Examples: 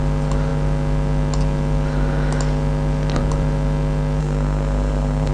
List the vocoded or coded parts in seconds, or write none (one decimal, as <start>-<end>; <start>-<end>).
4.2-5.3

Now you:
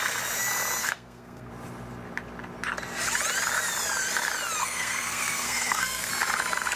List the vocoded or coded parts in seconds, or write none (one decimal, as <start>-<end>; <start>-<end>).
0.8-1.5; 4.6-6.1

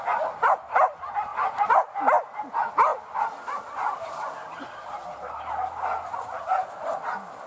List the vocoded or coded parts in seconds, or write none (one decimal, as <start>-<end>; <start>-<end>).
none

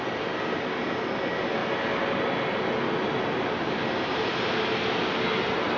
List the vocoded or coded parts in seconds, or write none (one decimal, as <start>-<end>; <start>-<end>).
none

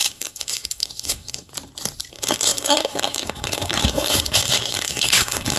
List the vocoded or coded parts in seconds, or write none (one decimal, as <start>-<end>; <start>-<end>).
0.0-1.5; 2.1-5.6